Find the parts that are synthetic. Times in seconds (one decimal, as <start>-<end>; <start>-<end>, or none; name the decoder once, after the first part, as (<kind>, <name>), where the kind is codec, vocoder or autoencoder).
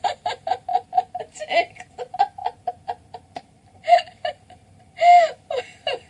0.0-0.7 (vocoder, BigVGAN v2); 1.2-6.1